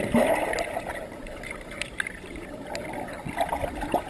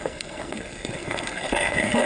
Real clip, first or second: first